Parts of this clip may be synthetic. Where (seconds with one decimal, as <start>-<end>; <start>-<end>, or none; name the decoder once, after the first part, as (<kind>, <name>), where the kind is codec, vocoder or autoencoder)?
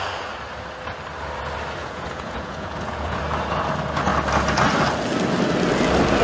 1.8-3.2 (vocoder, Vocos)